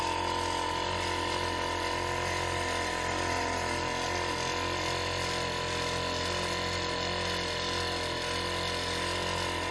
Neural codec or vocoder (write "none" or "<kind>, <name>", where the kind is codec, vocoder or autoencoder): none